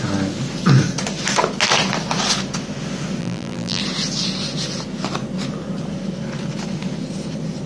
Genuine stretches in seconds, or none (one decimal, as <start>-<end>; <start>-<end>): 0.0-3.2; 3.8-7.7